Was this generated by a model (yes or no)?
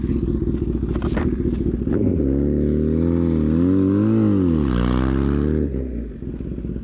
no